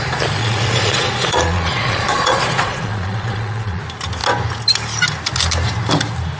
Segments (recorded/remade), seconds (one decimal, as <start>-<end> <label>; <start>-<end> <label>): 0.0-0.4 recorded; 0.4-3.8 remade; 3.8-6.4 recorded